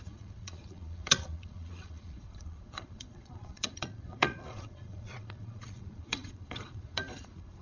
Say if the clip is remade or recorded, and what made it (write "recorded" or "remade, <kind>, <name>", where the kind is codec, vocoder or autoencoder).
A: remade, vocoder, Vocos